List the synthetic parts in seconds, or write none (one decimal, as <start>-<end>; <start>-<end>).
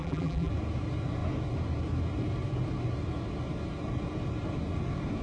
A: 0.0-0.5